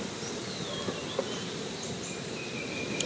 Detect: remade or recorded recorded